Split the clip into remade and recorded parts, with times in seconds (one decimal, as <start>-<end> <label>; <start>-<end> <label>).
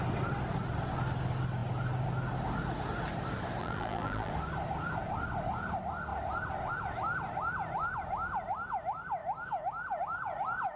0.0-3.6 recorded; 3.6-4.3 remade; 4.3-10.8 recorded